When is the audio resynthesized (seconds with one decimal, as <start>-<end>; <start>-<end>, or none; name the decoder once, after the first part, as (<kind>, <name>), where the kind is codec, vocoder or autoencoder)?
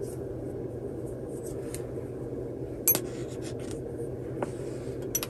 none